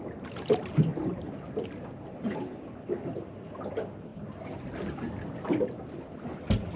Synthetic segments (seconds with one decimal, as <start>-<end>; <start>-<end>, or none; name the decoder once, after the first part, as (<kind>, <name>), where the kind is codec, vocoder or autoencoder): none